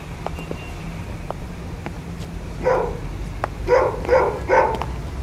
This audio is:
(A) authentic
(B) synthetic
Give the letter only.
A